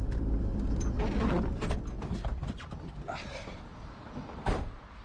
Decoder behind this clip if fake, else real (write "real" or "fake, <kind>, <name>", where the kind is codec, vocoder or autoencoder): fake, vocoder, BigVGAN v2